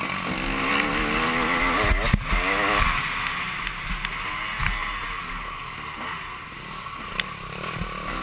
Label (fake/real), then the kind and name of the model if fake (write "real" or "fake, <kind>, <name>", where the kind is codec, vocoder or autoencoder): real